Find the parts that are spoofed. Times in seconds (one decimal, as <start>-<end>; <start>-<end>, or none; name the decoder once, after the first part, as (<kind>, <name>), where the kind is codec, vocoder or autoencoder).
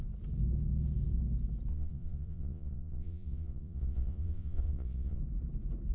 1.7-5.2 (vocoder, Vocos)